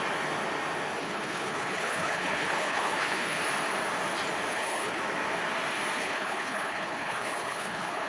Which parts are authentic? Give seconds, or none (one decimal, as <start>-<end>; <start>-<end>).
0.0-1.0; 3.4-4.5; 5.0-6.0